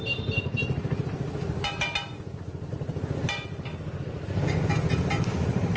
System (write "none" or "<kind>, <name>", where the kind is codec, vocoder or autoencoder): none